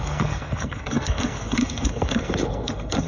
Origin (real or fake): fake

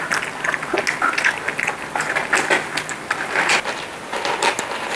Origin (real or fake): real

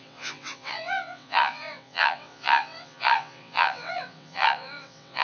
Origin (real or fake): fake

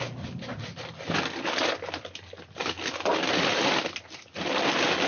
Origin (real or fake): real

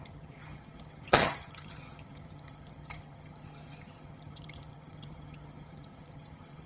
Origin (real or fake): fake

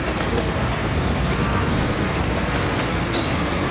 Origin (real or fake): fake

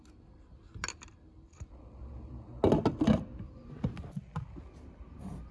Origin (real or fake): real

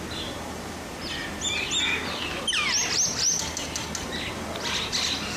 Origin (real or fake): real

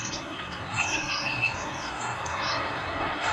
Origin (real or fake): fake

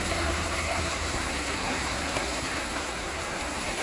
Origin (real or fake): fake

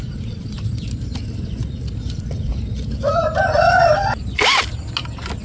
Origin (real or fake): real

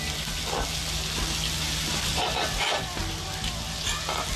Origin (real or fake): real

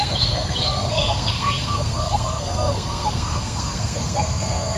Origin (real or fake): fake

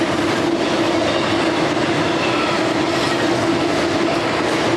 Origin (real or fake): real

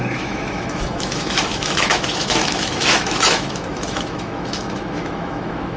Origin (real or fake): fake